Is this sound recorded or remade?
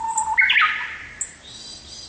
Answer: recorded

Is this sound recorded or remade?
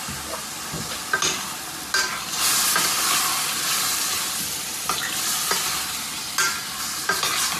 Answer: recorded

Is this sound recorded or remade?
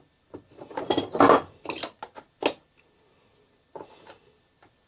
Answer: recorded